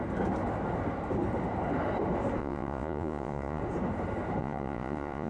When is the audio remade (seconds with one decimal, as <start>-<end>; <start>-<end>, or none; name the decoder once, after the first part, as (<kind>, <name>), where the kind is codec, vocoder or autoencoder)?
2.4-3.6 (vocoder, Vocos); 4.4-5.3